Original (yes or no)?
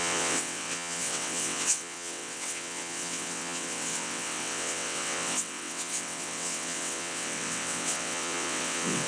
no